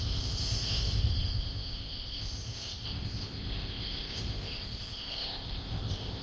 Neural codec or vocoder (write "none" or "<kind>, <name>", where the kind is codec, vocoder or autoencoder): codec, ZipCodec